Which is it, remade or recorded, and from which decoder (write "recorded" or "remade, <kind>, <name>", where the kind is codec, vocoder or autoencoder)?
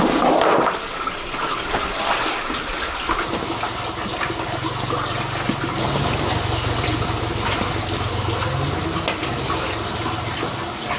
recorded